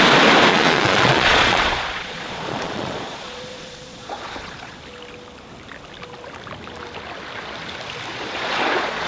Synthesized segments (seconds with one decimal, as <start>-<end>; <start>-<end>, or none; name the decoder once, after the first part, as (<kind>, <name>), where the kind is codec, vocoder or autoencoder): 0.5-4.8 (vocoder, Vocos); 8.1-9.1